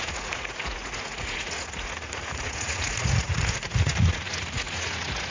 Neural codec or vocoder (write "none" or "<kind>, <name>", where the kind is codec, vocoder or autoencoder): vocoder, Vocos